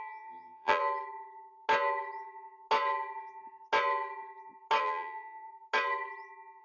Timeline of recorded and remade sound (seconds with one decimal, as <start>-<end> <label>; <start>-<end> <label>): 0.0-0.8 remade; 0.8-4.8 recorded; 4.8-5.5 remade; 5.5-6.6 recorded